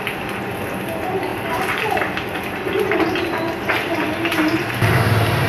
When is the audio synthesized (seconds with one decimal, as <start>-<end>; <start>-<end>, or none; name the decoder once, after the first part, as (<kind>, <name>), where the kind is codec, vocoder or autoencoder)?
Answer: none